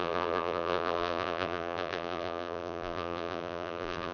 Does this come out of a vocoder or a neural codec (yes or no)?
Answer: yes